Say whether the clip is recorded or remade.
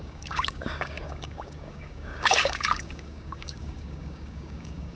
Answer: remade